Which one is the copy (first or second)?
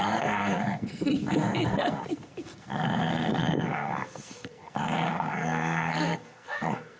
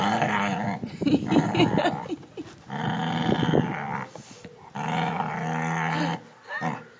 first